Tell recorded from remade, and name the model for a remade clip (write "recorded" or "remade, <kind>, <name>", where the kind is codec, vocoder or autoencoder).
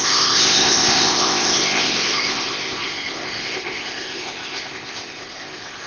remade, codec, ZipCodec